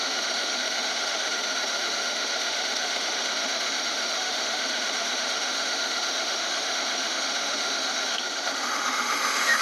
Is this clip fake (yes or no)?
yes